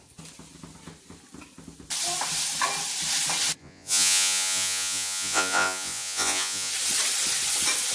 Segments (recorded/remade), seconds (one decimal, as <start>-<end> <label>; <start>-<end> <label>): 0.0-3.6 recorded; 3.6-6.7 remade; 6.7-7.9 recorded